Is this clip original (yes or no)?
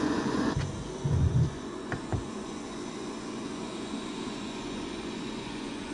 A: no